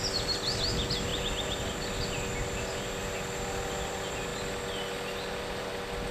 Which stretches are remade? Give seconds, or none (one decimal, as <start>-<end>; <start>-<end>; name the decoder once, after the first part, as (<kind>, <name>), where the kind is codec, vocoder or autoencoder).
none